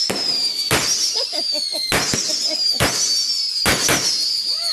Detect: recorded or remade recorded